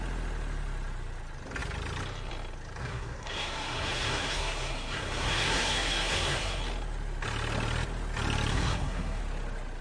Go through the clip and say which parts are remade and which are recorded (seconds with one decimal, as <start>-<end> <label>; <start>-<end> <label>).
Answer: 0.0-2.8 recorded; 2.8-6.6 remade; 6.6-8.5 recorded; 8.5-9.2 remade; 9.2-9.8 recorded